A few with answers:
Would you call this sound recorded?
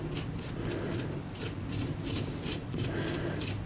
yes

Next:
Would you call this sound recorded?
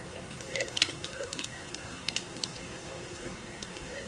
no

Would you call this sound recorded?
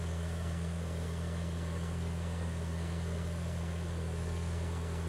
no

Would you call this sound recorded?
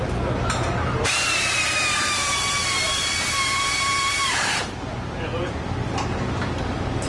no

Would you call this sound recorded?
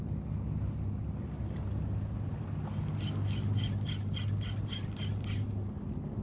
yes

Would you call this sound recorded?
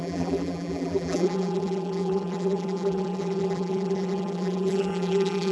no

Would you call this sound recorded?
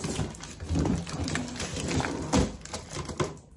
yes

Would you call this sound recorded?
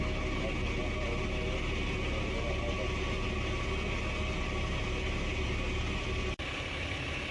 yes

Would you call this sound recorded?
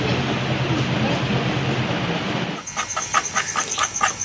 yes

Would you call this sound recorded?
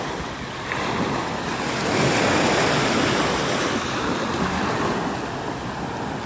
yes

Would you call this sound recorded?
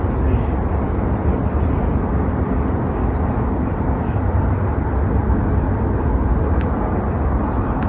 yes